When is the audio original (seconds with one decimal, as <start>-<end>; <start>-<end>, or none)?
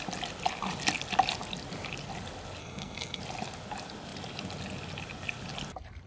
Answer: 0.0-2.6; 3.2-6.1